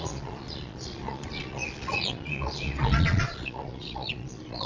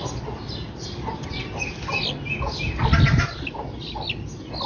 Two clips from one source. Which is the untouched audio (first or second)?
second